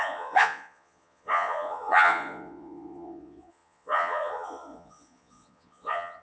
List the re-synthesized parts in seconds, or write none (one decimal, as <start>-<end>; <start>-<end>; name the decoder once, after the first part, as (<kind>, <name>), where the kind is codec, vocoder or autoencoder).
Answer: 0.0-6.2 (vocoder, Vocos)